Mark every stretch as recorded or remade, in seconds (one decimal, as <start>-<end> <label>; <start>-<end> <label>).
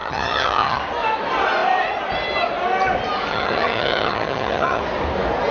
0.0-0.8 remade; 0.8-3.3 recorded; 3.3-4.8 remade; 4.8-5.5 recorded